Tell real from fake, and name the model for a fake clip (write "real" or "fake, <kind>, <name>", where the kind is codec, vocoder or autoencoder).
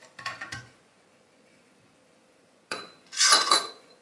fake, vocoder, Vocos